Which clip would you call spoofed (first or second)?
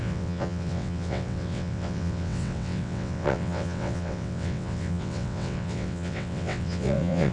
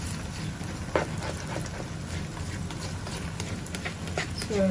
first